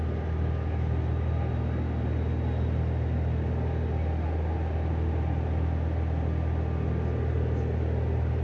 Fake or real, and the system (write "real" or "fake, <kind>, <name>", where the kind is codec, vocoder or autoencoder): real